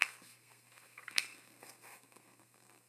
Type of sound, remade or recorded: remade